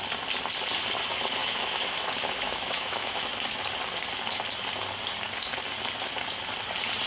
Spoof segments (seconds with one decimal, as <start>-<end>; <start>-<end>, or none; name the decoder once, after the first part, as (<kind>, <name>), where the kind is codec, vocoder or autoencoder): 1.4-3.3 (autoencoder, DAC-VAE)